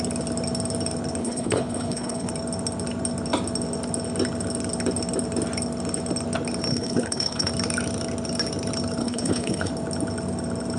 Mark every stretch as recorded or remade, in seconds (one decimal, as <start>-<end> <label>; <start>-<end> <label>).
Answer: 0.0-1.2 recorded; 1.2-2.3 remade; 2.3-6.7 recorded; 6.7-7.5 remade; 7.5-9.0 recorded; 9.0-9.7 remade; 9.7-10.8 recorded